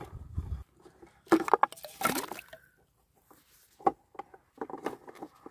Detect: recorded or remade recorded